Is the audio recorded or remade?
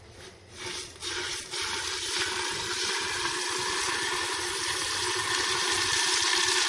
remade